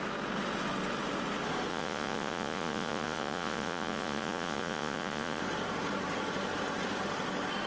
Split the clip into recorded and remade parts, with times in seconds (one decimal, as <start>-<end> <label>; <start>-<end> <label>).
0.0-1.7 recorded; 1.7-5.4 remade; 5.4-7.7 recorded